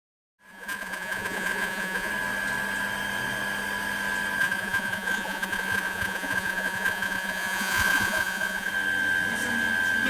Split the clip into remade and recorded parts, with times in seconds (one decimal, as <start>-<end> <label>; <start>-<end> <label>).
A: 0.0-0.5 recorded; 0.5-2.1 remade; 2.1-4.4 recorded; 4.4-8.7 remade; 8.7-10.1 recorded